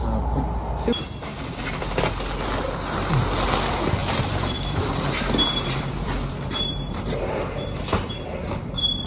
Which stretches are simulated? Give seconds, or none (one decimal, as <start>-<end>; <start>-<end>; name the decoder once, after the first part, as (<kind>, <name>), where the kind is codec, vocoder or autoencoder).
1.3-2.0 (vocoder, BigVGAN v2); 4.0-8.5